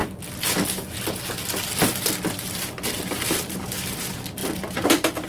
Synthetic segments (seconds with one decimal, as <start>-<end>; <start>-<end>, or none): 4.4-5.3